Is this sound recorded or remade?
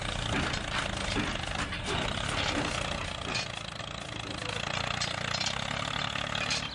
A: recorded